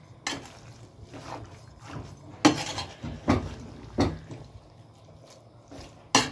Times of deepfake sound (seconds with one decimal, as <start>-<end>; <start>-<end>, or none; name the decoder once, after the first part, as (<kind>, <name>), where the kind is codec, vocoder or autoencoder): none